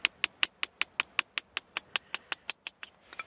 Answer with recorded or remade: recorded